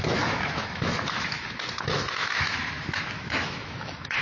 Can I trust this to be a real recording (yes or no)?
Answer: no